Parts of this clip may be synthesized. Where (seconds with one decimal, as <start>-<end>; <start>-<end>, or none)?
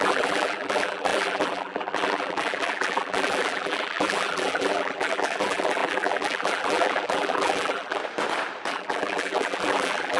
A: 0.0-8.0; 8.7-10.2